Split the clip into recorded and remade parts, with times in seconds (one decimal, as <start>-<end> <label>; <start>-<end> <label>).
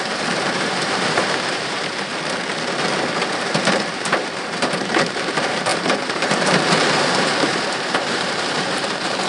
0.0-2.1 remade; 2.1-2.7 recorded; 2.7-9.3 remade